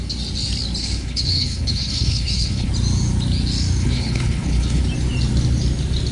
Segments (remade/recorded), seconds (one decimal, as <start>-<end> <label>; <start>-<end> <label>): 0.0-0.8 recorded; 0.8-2.7 remade; 2.7-3.8 recorded; 3.8-4.8 remade; 4.8-6.1 recorded